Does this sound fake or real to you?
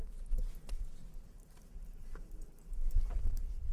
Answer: fake